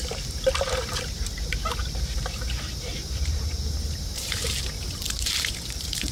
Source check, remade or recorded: remade